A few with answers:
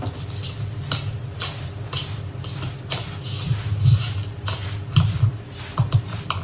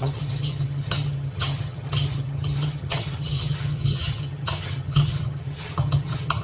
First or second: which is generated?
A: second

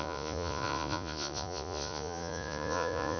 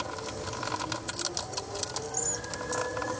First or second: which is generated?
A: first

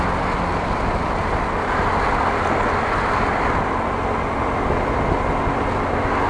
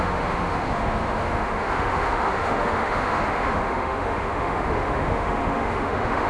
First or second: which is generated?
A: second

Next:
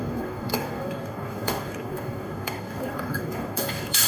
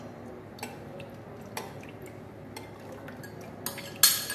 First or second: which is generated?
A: first